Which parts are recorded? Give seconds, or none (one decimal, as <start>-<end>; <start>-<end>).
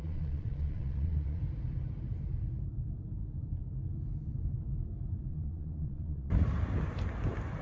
1.4-5.3; 6.3-7.6